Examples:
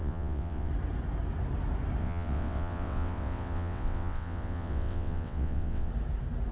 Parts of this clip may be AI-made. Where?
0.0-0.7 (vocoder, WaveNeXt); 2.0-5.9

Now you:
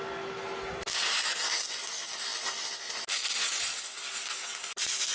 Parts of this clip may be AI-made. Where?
none

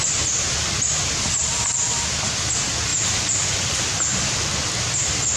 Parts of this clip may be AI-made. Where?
none

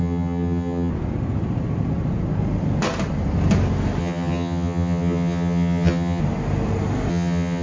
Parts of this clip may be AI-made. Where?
0.0-0.9 (vocoder, HiFi-GAN); 4.0-6.2; 7.1-7.6

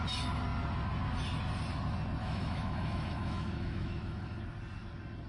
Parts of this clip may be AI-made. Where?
2.2-4.4 (autoencoder, DAC-VAE)